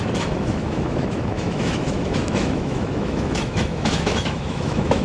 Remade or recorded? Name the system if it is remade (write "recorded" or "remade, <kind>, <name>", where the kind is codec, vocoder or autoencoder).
remade, autoencoder, DAC-VAE